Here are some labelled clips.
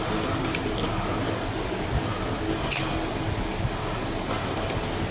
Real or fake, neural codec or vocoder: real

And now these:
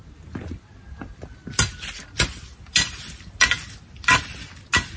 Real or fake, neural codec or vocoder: real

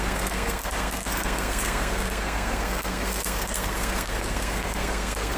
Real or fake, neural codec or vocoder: fake, codec, SNAC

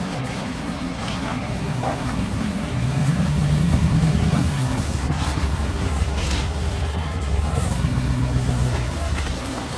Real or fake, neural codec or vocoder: fake, codec, SNAC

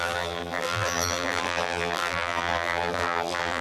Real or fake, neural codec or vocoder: fake, vocoder, BigVGAN v2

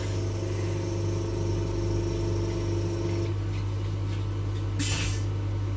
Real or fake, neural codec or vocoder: real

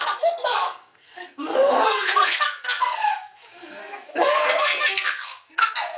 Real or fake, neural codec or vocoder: fake, codec, SNAC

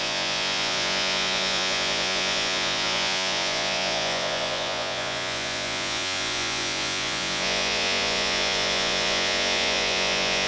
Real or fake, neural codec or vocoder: fake, vocoder, Vocos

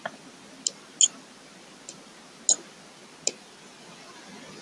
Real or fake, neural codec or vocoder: real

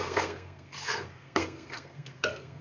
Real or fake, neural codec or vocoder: fake, codec, SNAC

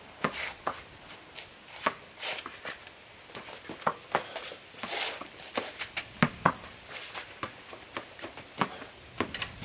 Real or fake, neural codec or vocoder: real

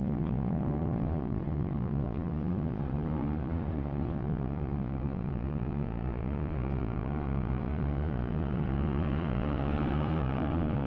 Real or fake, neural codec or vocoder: fake, vocoder, Vocos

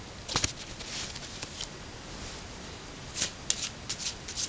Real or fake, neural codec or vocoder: real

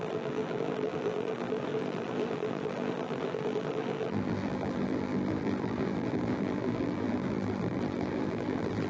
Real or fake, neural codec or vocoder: fake, vocoder, BigVGAN v2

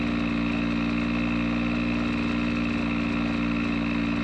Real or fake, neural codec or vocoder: real